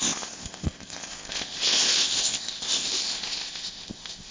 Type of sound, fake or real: fake